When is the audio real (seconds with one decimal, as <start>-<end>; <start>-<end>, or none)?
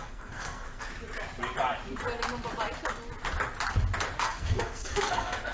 0.9-4.2